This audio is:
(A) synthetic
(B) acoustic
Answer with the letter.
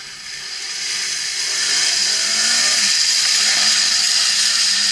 B